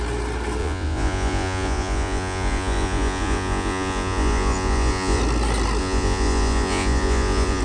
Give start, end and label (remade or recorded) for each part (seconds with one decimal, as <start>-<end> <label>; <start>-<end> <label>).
0.0-0.6 recorded; 0.6-5.2 remade; 5.2-5.8 recorded; 5.8-7.6 remade